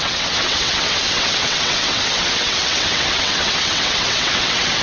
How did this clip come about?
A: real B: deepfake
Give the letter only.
B